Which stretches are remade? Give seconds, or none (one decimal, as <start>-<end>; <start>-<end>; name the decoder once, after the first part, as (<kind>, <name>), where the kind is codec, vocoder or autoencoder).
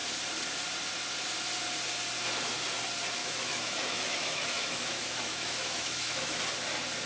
3.2-6.4 (autoencoder, DAC-VAE)